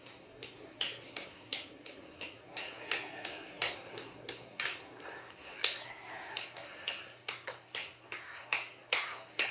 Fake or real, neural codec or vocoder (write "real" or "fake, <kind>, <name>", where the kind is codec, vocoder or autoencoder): fake, codec, SNAC